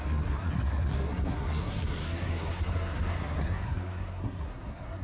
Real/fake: fake